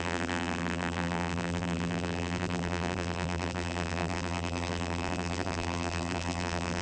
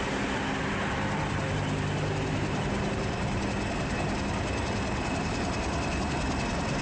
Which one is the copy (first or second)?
first